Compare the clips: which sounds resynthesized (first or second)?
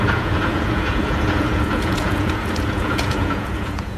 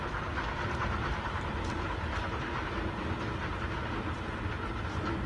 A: first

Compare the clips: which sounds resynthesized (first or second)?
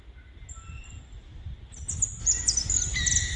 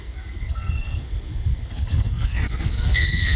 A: second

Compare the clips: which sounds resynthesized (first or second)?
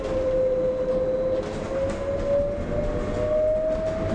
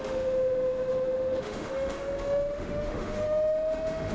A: second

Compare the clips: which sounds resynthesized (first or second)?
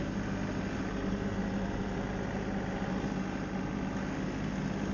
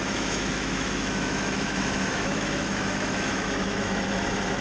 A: second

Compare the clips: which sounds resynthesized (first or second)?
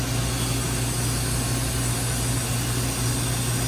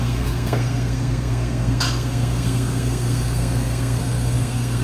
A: second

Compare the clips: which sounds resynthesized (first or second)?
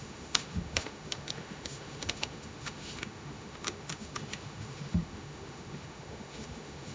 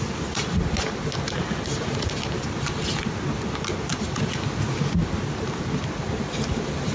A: first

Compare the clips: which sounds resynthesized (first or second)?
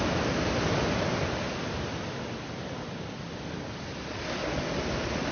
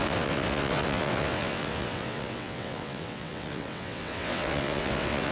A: second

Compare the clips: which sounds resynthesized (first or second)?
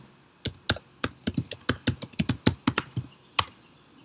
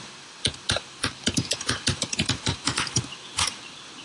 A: second